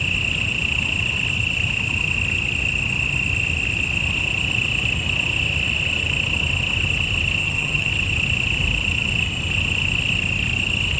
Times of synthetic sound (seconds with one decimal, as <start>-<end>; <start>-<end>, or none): 7.4-7.9